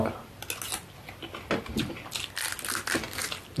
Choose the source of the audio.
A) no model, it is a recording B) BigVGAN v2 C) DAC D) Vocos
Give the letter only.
A